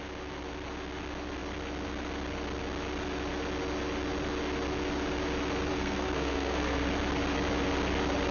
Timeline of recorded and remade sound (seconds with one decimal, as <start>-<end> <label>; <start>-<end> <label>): 0.0-5.7 recorded; 5.7-6.9 remade; 6.9-8.3 recorded